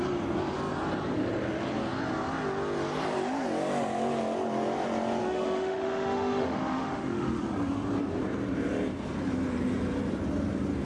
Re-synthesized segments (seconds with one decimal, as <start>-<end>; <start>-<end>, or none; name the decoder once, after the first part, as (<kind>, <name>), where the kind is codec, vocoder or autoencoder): 5.2-7.4 (autoencoder, DAC-VAE)

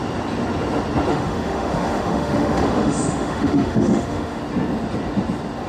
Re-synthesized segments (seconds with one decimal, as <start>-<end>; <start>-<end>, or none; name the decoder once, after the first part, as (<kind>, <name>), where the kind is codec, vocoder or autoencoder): 1.1-4.4 (autoencoder, DAC-VAE)

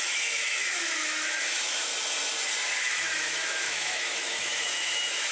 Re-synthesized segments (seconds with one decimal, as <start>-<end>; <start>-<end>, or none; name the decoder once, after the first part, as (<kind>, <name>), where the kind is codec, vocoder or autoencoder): 0.0-1.9 (autoencoder, DAC-VAE); 2.8-5.3

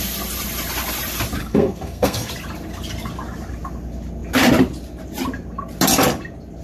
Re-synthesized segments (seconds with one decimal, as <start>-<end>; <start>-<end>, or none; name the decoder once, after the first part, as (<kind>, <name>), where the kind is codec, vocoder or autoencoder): 1.4-2.3 (codec, SNAC)

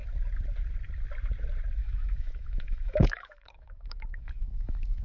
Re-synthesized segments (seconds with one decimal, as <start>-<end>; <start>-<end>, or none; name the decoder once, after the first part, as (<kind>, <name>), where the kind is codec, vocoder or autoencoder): 1.8-5.0 (autoencoder, DAC-VAE)